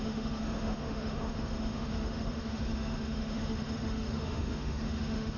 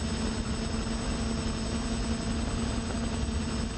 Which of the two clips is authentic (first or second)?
second